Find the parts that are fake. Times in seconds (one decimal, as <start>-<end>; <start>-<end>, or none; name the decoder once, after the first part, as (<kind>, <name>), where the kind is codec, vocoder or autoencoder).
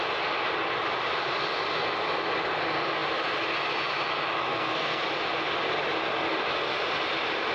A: 4.5-5.0 (codec, SNAC)